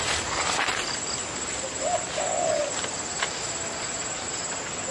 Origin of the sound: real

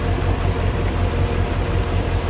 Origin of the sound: real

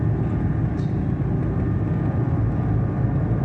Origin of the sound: real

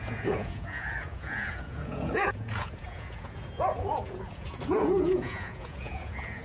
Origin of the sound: fake